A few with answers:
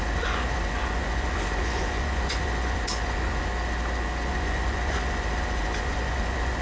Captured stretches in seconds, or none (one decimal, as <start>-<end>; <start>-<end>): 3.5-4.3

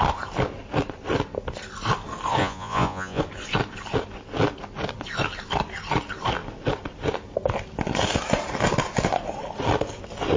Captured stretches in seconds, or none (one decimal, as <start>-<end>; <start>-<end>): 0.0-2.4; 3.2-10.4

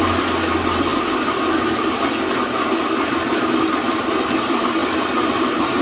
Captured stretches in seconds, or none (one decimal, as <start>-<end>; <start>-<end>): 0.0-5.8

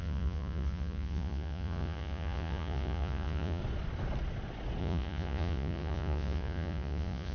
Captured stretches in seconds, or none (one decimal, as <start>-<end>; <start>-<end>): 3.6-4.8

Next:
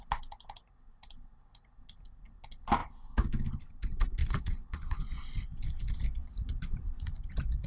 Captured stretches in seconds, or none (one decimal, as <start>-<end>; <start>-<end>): 0.0-4.2; 5.2-6.2; 7.2-7.7